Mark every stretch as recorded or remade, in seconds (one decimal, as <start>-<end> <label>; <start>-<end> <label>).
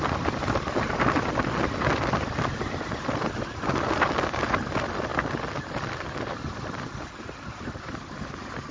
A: 0.0-8.7 recorded